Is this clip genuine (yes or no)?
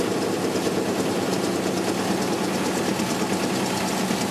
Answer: yes